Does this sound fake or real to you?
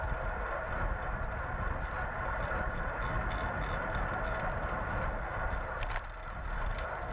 real